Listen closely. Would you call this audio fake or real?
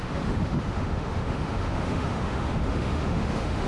fake